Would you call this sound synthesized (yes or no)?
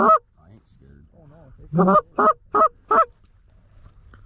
no